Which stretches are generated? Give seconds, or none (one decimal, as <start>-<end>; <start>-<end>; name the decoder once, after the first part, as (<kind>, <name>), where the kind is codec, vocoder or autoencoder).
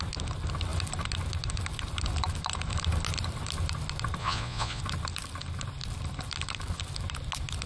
4.2-4.8 (vocoder, Vocos)